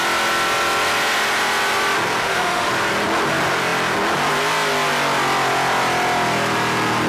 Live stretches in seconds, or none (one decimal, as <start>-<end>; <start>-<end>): 0.0-2.2; 2.7-7.1